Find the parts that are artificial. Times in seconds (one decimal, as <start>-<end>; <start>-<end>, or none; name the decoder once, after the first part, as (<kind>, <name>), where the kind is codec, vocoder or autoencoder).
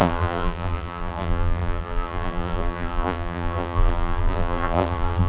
0.0-5.3 (vocoder, BigVGAN v2)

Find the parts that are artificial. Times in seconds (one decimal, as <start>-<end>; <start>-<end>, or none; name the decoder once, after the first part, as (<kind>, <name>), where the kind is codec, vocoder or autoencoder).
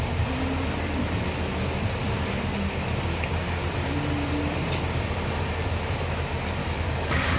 6.6-7.4 (codec, DAC)